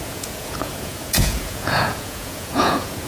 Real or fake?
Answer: fake